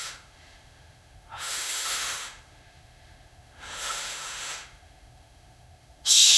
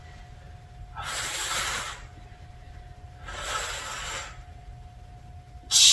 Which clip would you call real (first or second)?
second